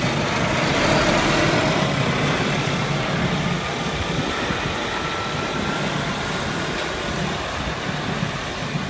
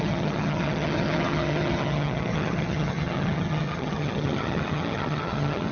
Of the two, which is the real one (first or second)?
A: first